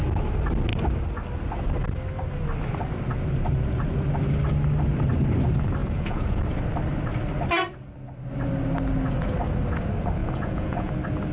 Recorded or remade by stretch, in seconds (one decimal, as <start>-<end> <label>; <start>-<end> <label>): 0.0-5.8 recorded; 5.8-6.4 remade; 6.4-10.2 recorded; 10.2-10.9 remade; 10.9-11.3 recorded